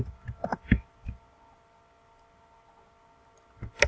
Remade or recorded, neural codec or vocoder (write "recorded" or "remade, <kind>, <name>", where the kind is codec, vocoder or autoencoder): recorded